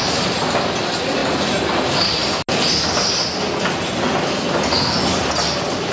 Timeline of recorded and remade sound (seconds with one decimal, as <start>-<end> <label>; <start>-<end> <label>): 0.0-1.2 recorded; 1.2-1.8 remade; 1.8-5.9 recorded